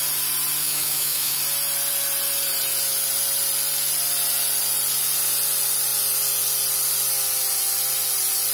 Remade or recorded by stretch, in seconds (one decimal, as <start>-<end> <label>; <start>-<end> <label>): 0.0-0.6 recorded; 0.6-1.4 remade; 1.4-8.5 recorded